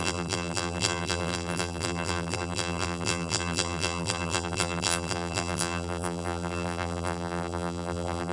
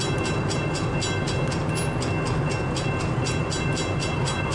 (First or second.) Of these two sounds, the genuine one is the second